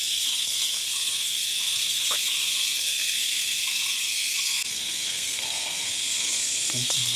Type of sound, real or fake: fake